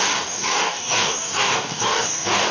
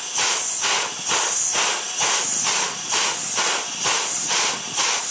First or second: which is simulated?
first